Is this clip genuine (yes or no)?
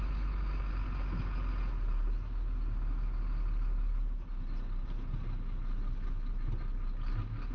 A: yes